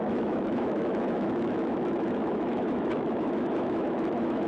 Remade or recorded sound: remade